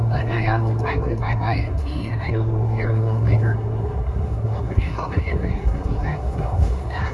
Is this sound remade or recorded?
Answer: remade